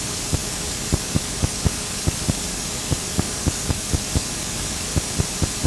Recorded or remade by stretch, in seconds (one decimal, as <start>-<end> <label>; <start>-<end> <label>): 0.0-4.9 remade; 4.9-5.7 recorded